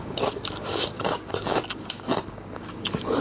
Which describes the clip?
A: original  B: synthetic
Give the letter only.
B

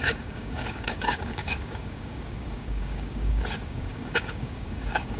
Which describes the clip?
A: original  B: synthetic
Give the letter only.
B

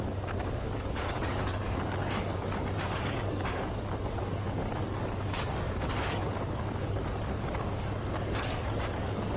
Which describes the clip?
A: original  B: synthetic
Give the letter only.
B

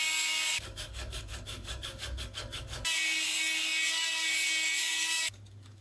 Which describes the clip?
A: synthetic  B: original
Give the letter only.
A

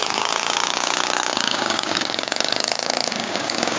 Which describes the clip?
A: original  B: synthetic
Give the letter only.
B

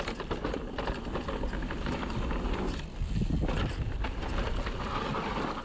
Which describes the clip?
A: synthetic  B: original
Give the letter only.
B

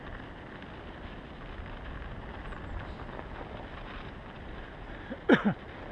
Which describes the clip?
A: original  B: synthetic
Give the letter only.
A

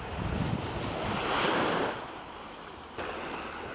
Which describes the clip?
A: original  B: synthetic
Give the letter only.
A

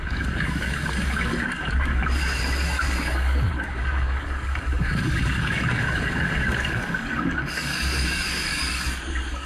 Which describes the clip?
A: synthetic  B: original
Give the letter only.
A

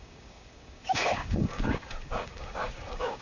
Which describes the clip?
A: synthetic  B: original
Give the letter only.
A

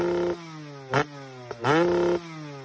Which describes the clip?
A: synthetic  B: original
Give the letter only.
B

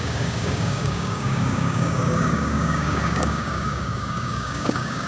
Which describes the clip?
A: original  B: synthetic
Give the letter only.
B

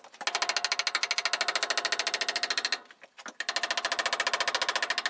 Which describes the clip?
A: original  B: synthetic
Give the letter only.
A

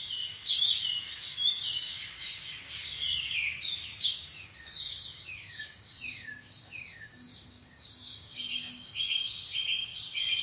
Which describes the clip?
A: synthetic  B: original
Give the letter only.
A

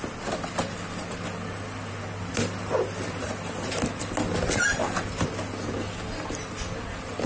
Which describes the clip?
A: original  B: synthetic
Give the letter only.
A